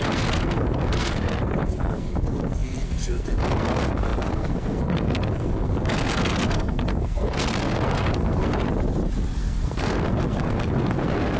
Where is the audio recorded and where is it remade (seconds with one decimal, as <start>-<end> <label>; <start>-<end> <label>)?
0.0-8.5 remade; 8.5-9.4 recorded; 9.4-11.4 remade